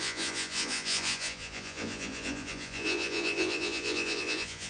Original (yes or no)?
no